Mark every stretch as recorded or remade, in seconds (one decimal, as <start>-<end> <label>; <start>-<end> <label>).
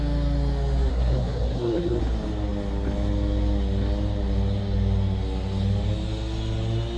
0.0-0.9 recorded; 0.9-2.0 remade; 2.0-7.0 recorded